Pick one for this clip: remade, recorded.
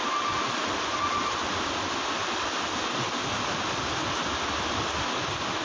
recorded